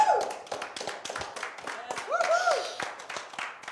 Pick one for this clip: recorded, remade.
recorded